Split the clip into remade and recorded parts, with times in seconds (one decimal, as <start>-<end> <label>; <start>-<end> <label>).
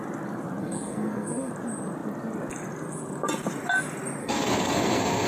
0.0-0.6 recorded; 0.6-1.5 remade; 1.5-4.2 recorded; 4.2-5.3 remade